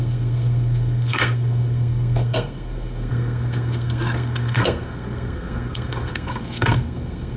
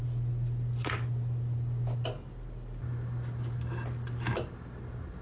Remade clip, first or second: first